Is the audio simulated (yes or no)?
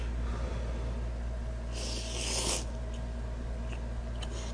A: no